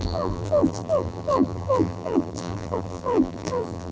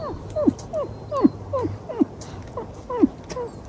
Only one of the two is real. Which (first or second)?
second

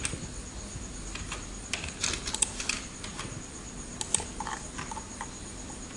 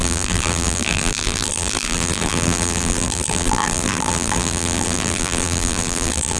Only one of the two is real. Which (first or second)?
first